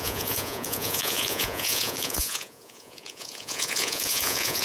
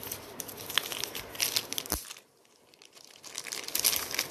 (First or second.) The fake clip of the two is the first